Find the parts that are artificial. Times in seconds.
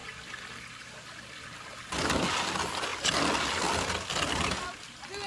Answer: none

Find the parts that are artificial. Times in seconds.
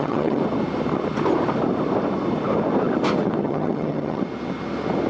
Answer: 0.0-0.4 (vocoder, HiFi-GAN); 3.4-4.2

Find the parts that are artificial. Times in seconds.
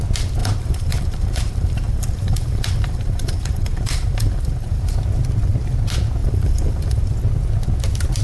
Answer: 0.4-4.9 (vocoder, BigVGAN v2); 6.2-7.0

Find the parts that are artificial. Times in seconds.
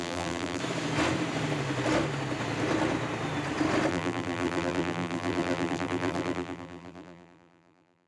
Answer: 0.0-0.6 (vocoder, BigVGAN v2); 3.9-8.1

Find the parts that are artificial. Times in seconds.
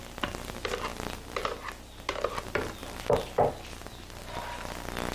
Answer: none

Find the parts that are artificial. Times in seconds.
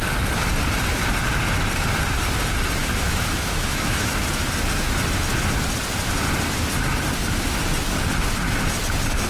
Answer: 2.8-4.2 (autoencoder, DAC-VAE)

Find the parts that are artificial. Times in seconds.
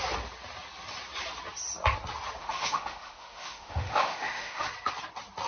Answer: 2.4-4.7 (autoencoder, DAC-VAE)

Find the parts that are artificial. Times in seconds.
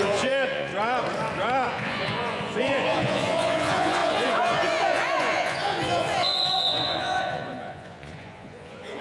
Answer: 0.0-0.7 (vocoder, Vocos); 1.7-9.0